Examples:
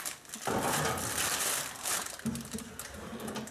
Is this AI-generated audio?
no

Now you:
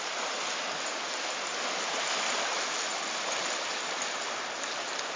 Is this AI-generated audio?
no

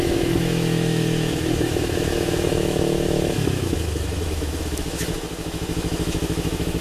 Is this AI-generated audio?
yes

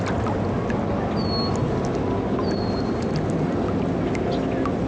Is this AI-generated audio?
no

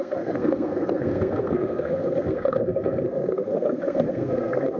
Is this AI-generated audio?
yes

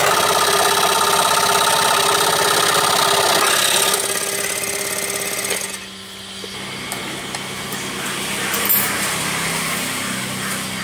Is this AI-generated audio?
no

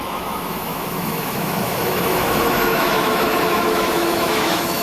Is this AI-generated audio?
yes